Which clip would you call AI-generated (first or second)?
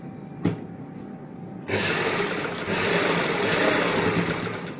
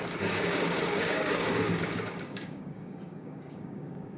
second